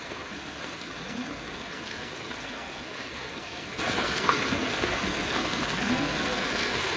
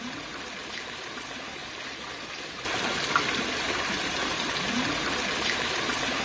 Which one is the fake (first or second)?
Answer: first